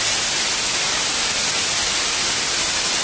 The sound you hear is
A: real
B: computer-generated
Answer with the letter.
A